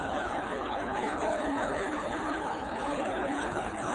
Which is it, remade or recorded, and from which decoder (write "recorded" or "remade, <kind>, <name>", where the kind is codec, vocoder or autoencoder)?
remade, codec, HILCodec